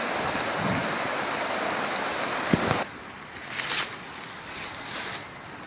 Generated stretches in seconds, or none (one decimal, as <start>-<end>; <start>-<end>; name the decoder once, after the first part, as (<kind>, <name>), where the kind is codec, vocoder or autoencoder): none